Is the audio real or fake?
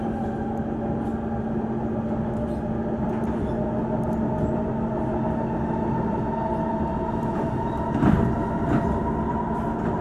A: real